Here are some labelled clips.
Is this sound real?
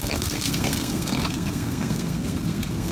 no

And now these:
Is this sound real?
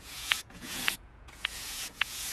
no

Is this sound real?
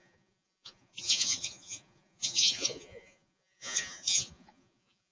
no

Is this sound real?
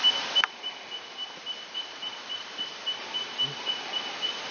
no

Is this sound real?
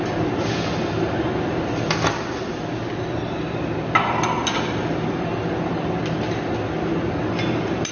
yes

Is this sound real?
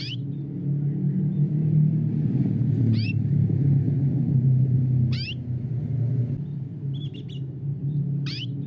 yes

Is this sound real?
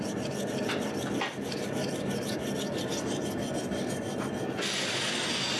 yes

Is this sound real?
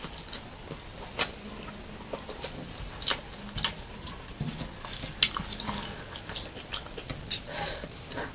yes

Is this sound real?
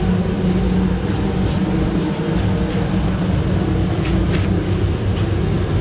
yes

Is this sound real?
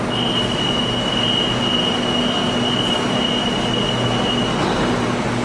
yes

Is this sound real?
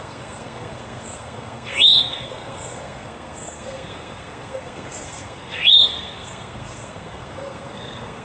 no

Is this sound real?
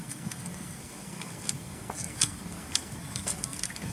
no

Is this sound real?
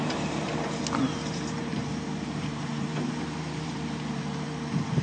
no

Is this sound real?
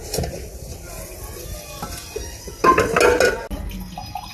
yes